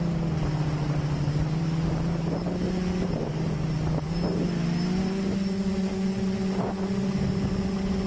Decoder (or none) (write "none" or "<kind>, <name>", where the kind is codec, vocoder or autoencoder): none